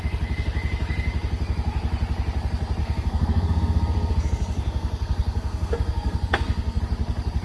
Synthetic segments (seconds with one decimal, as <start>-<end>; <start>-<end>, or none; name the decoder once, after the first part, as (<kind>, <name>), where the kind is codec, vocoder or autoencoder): 2.8-6.8 (codec, SNAC)